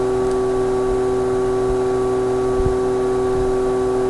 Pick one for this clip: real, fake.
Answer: real